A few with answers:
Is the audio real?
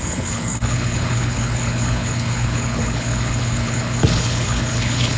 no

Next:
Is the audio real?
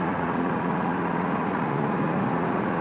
no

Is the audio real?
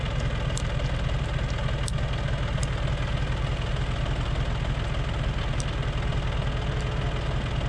yes